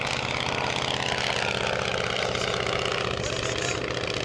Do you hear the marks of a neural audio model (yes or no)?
no